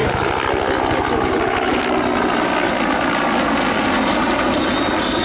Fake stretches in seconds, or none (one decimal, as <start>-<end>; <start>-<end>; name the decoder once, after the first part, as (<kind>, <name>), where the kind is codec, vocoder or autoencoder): none